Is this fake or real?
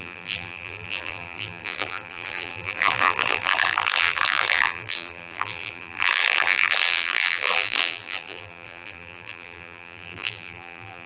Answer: fake